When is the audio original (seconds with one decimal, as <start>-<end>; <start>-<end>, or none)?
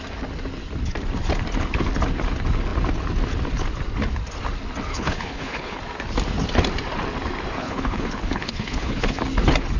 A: 0.0-4.9; 5.8-7.6; 9.2-9.8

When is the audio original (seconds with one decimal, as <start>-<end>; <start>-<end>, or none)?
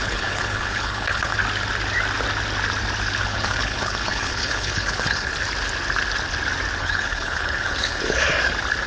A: 1.4-3.2; 5.3-6.8; 8.3-8.9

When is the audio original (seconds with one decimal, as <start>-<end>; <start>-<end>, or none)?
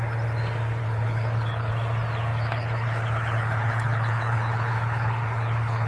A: 0.0-0.8; 1.7-2.3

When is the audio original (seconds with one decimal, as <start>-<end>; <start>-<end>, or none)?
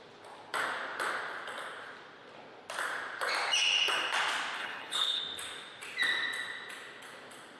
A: 0.0-4.6; 5.2-7.6